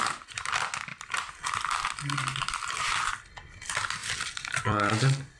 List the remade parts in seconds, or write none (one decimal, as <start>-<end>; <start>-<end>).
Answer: 0.9-3.3; 4.0-5.4